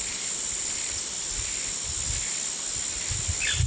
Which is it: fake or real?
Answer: real